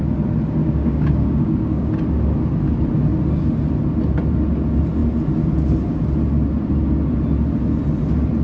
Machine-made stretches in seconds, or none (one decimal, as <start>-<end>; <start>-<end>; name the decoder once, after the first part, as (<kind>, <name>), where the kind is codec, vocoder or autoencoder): 0.6-1.9 (codec, DAC)